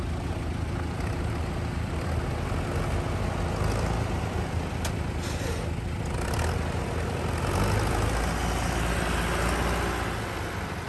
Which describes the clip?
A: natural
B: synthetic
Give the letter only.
A